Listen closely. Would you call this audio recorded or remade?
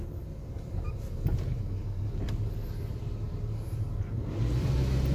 recorded